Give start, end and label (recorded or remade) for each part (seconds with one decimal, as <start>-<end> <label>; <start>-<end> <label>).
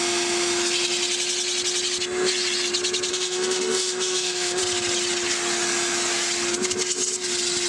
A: 0.0-3.1 recorded; 3.1-4.6 remade; 4.6-7.7 recorded